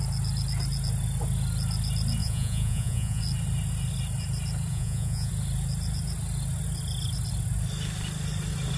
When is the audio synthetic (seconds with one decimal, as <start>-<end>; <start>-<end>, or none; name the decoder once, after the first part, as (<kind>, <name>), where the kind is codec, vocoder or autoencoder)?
2.2-3.2 (vocoder, Vocos); 4.7-5.3